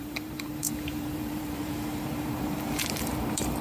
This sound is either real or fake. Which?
fake